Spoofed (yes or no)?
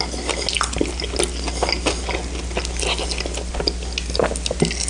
no